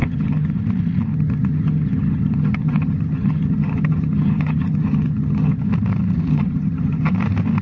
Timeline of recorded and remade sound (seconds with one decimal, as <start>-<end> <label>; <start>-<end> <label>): 0.0-0.6 remade; 0.6-1.1 recorded; 1.1-5.7 remade; 5.7-6.3 recorded; 6.3-7.1 remade; 7.1-7.6 recorded